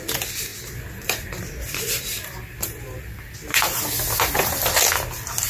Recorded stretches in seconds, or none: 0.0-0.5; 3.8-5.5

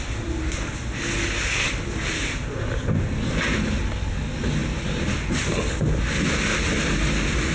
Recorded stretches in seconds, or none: 0.0-7.5

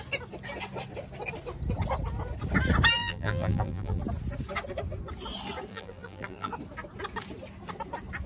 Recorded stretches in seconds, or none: 0.0-3.0; 4.0-5.7; 6.5-8.3

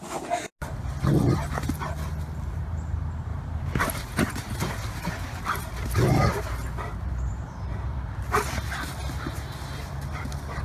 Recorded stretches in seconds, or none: 0.0-3.3; 3.9-6.2; 8.4-10.6

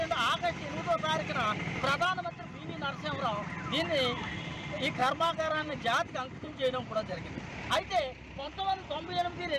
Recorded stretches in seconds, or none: 0.0-5.0; 9.0-9.6